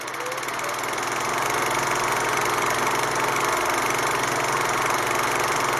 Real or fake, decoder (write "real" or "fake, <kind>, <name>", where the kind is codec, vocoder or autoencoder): real